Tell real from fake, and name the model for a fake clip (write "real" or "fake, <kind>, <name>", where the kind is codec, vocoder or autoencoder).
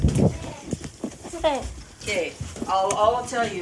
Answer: real